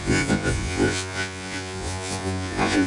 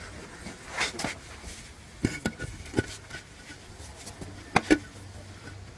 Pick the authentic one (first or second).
second